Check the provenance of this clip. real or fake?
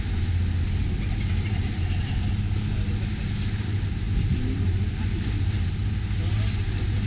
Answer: real